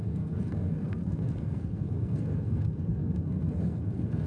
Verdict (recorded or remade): remade